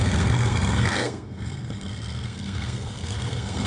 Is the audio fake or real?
fake